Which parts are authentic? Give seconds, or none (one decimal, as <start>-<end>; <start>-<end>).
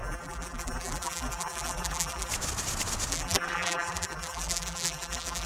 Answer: 2.3-3.1